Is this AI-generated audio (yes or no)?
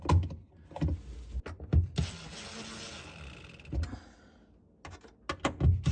no